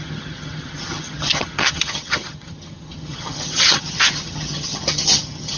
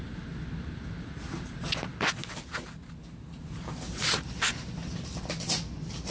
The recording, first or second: second